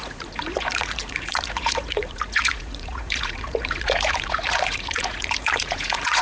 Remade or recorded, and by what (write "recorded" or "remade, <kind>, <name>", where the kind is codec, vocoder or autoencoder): remade, vocoder, Vocos